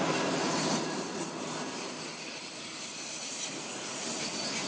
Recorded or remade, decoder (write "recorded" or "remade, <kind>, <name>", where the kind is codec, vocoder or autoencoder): recorded